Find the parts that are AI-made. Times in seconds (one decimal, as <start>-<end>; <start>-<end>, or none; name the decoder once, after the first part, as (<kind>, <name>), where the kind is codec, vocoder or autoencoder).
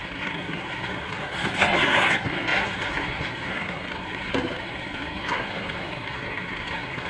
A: 0.0-7.1 (codec, SNAC)